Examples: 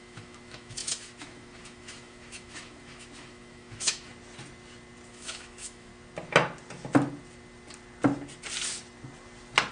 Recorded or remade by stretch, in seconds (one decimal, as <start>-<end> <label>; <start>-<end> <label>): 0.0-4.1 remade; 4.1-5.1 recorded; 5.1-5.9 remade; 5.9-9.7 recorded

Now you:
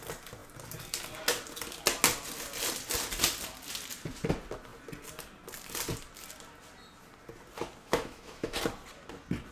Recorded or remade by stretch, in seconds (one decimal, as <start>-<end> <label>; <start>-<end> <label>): 0.0-7.8 recorded; 7.8-8.6 remade; 8.6-9.5 recorded

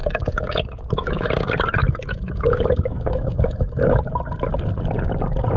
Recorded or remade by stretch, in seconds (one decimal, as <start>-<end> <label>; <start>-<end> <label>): 0.0-1.3 remade; 1.3-1.8 recorded; 1.8-4.0 remade; 4.0-5.6 recorded

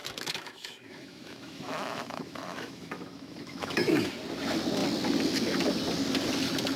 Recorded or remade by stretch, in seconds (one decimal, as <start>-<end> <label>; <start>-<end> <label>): 0.0-4.1 remade; 4.1-6.8 recorded

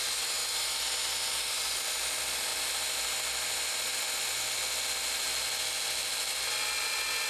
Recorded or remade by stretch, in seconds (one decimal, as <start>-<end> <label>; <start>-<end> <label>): 0.0-7.3 recorded